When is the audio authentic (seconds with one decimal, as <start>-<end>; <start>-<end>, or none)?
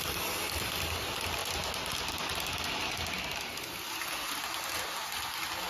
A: 0.0-5.7